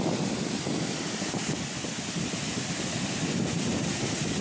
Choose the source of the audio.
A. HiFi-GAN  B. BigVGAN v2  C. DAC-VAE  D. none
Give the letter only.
D